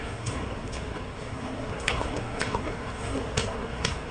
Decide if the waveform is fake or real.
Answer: fake